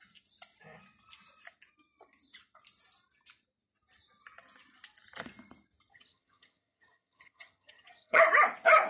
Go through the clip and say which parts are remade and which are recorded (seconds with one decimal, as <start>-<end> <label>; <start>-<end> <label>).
0.0-5.9 recorded; 5.9-8.2 remade; 8.2-8.9 recorded